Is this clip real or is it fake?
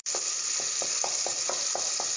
real